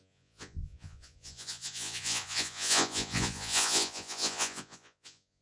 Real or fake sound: fake